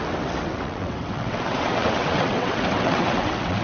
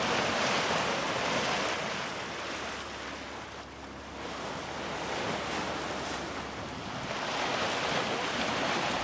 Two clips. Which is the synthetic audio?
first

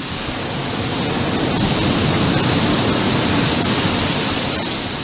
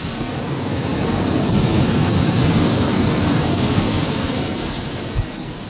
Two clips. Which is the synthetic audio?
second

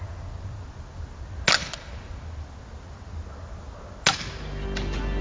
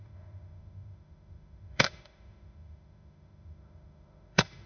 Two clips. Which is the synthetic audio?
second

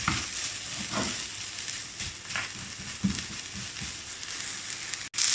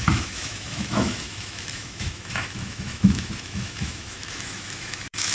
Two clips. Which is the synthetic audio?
second